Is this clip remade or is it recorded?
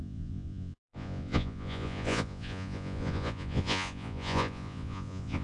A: remade